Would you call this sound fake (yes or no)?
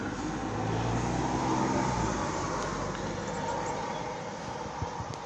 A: no